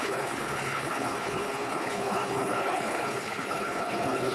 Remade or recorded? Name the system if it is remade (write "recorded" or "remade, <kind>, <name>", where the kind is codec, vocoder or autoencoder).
remade, codec, HILCodec